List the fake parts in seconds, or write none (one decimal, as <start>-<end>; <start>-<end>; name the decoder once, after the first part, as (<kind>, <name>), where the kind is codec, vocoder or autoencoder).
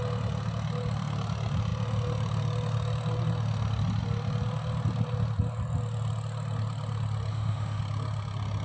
7.3-7.8 (autoencoder, DAC-VAE)